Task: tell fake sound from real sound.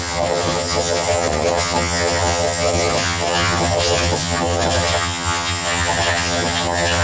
fake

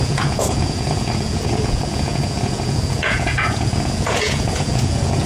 fake